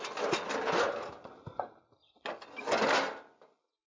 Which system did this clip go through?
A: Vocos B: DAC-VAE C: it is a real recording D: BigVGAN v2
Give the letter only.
C